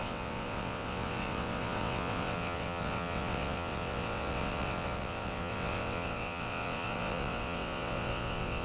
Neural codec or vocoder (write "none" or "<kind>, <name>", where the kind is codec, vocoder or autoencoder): vocoder, WaveNeXt